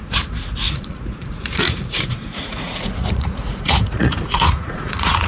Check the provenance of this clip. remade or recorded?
remade